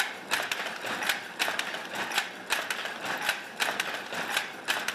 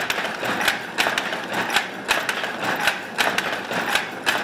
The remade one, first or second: first